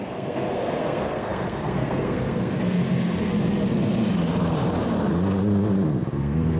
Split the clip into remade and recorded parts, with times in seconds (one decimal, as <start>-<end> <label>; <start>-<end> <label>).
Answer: 0.0-3.3 remade; 3.3-6.1 recorded; 6.1-6.6 remade